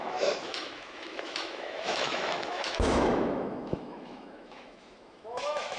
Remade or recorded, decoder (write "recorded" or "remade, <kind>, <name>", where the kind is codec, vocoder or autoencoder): remade, autoencoder, DAC-VAE